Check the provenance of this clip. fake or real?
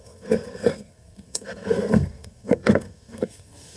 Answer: fake